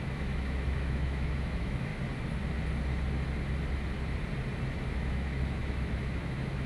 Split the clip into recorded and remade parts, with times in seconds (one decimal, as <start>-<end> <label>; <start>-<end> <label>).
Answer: 0.0-1.9 remade; 1.9-4.9 recorded; 4.9-6.7 remade